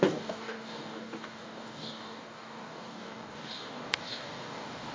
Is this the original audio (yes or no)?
no